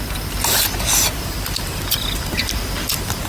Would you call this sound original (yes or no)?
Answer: no